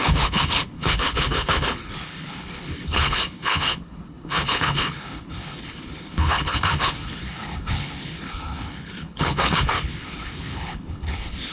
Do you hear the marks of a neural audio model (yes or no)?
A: yes